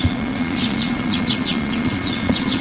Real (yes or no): no